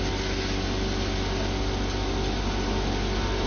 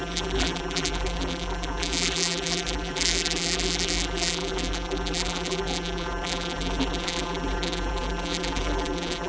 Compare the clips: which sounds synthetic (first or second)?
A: second